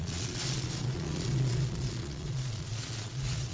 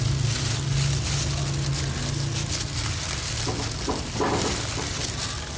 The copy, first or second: first